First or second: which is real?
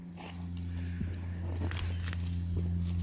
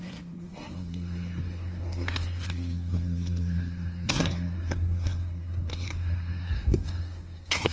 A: first